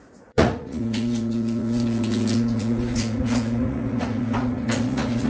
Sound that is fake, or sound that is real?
fake